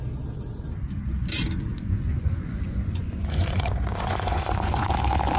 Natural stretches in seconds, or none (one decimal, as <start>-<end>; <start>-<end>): 0.0-1.7; 4.9-5.4